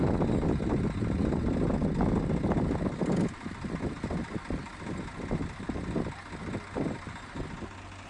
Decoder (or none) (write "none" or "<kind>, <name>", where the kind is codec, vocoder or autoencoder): none